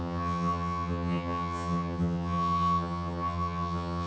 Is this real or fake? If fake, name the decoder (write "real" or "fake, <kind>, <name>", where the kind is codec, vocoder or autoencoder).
fake, vocoder, HiFi-GAN